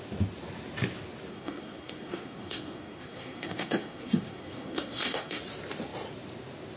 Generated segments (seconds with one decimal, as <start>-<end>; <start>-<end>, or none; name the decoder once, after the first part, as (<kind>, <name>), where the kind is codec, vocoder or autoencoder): 1.3-5.4 (codec, SNAC)